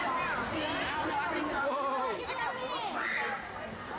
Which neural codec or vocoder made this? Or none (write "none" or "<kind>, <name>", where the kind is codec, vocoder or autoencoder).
none